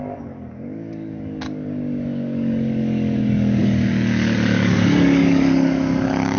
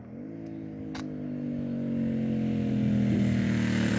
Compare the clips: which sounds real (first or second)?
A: second